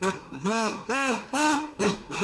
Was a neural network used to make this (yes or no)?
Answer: yes